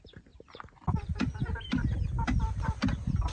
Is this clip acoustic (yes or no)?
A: yes